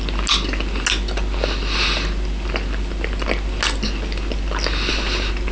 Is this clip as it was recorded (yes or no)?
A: yes